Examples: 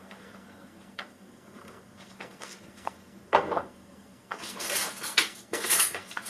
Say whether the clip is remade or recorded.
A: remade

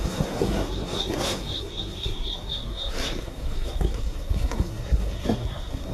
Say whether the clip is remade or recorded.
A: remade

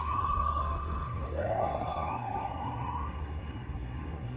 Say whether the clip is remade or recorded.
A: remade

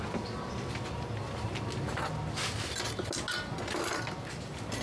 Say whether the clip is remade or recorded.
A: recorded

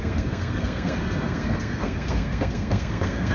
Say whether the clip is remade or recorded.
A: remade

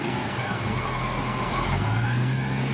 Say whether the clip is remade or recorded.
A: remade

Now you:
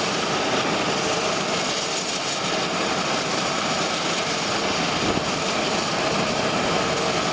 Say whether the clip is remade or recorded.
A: recorded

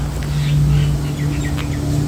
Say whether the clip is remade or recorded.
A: recorded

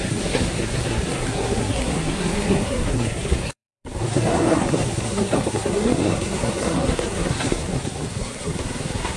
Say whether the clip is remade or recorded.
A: remade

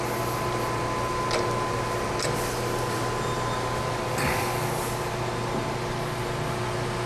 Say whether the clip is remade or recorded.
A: recorded